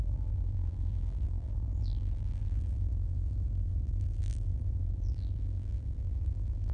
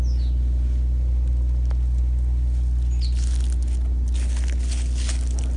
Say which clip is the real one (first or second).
second